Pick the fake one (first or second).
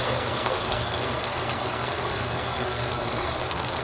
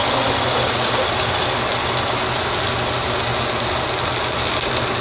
first